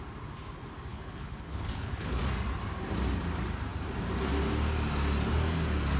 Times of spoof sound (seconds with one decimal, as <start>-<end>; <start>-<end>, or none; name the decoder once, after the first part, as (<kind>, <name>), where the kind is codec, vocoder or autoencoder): 0.9-2.2 (codec, HILCodec)